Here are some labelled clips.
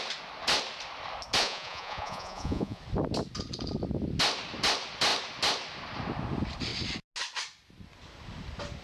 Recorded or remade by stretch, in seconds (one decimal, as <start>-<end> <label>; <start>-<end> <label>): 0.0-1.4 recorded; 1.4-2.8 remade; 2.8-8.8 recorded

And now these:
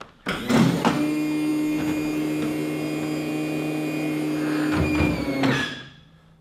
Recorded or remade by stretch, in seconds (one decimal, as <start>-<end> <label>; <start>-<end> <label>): 0.0-6.4 recorded

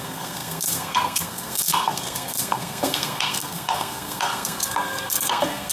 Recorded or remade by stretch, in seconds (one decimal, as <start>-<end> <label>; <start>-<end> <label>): 0.0-5.7 remade